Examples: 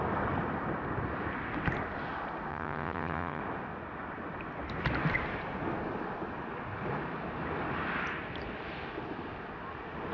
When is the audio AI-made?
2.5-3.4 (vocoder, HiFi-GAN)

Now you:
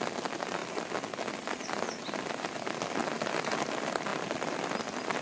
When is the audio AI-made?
none